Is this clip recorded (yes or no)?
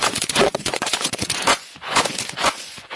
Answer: no